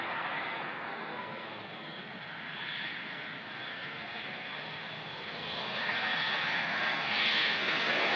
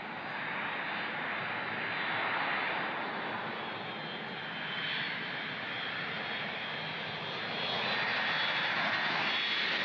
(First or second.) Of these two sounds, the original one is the second